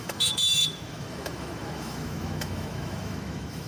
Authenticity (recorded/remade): remade